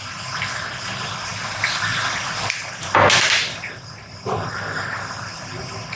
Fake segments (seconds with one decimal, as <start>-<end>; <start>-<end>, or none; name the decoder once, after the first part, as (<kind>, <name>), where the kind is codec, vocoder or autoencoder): none